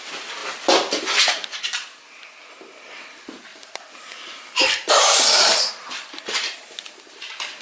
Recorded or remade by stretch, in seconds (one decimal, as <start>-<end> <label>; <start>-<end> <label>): 0.0-3.5 recorded; 3.5-6.9 remade; 6.9-7.6 recorded